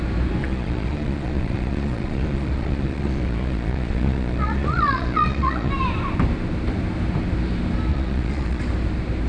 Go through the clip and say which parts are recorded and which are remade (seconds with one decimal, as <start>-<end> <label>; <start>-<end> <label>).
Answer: 0.0-0.4 recorded; 0.4-5.7 remade; 5.7-7.9 recorded; 7.9-8.6 remade; 8.6-9.3 recorded